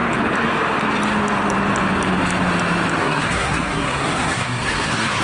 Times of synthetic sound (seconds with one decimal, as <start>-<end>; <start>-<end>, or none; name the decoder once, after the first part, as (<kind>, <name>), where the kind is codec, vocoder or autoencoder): 3.0-5.2 (codec, SNAC)